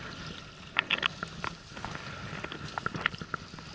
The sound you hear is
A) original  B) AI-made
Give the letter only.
A